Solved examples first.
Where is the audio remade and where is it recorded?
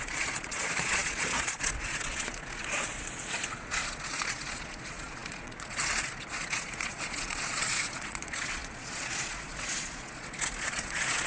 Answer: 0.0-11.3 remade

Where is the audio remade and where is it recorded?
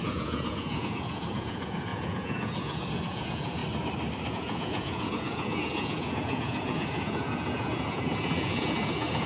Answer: 0.0-3.6 remade; 3.6-4.3 recorded; 4.3-9.3 remade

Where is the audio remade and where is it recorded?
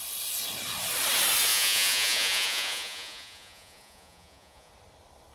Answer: 0.0-1.5 recorded; 1.5-4.7 remade; 4.7-5.3 recorded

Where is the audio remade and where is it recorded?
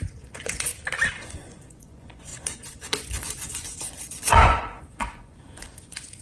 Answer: 0.0-0.7 remade; 0.7-1.2 recorded; 1.2-6.2 remade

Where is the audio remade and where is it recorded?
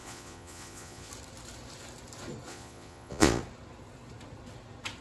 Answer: 0.0-1.1 remade; 1.1-2.5 recorded; 2.5-3.4 remade; 3.4-5.0 recorded